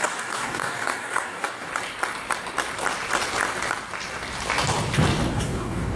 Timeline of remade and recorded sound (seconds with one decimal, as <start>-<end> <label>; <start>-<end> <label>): 0.0-1.7 remade; 1.7-5.3 recorded; 5.3-6.0 remade